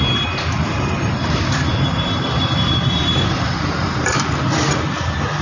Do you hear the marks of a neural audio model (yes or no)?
yes